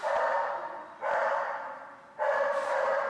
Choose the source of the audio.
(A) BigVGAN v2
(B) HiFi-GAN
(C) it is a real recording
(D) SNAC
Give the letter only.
A